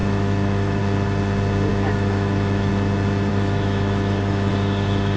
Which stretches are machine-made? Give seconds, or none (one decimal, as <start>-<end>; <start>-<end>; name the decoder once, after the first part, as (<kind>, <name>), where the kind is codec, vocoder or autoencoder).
0.0-0.8 (autoencoder, DAC-VAE); 1.7-2.7; 3.3-4.5